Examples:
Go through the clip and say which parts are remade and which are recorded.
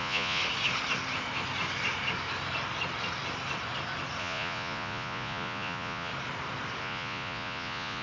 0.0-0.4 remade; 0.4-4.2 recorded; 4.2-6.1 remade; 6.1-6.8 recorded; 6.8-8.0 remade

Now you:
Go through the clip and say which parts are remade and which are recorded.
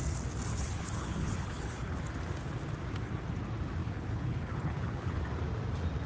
0.0-0.5 recorded; 0.5-2.0 remade; 2.0-3.8 recorded; 3.8-5.2 remade; 5.2-6.1 recorded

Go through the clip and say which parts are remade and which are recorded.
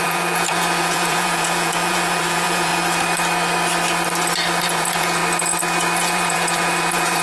0.0-2.7 remade; 2.7-4.6 recorded; 4.6-5.2 remade; 5.2-6.0 recorded; 6.0-7.2 remade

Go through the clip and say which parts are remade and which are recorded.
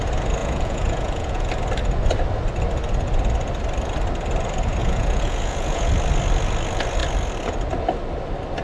0.0-0.4 recorded; 0.4-1.5 remade; 1.5-4.8 recorded; 4.8-5.9 remade; 5.9-8.6 recorded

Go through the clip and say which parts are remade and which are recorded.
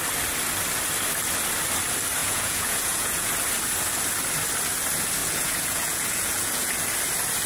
0.0-2.2 recorded; 2.2-3.3 remade; 3.3-5.2 recorded; 5.2-6.7 remade; 6.7-7.5 recorded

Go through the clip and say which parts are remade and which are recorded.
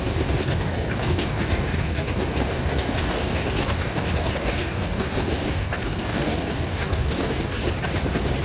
0.0-7.6 remade; 7.6-8.4 recorded